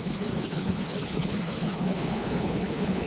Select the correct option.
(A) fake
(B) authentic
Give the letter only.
A